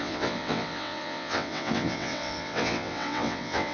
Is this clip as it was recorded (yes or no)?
no